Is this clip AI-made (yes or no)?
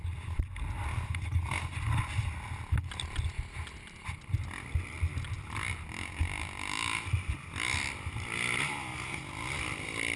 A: no